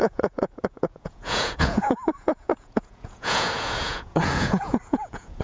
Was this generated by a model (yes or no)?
yes